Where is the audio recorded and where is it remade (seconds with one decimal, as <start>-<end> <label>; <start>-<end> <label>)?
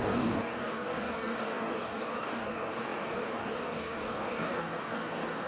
0.0-5.5 remade